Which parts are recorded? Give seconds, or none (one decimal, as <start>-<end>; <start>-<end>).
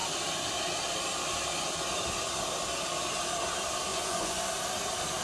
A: 0.0-3.9; 4.4-5.2